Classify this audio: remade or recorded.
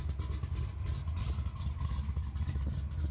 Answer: recorded